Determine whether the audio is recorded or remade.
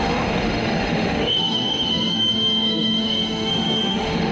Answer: remade